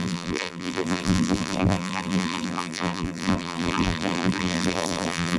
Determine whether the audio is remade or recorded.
remade